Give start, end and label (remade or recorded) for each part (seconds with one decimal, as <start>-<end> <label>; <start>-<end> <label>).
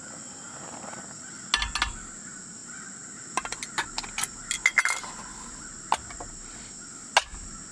0.0-7.7 recorded